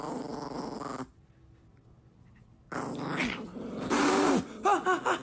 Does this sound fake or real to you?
real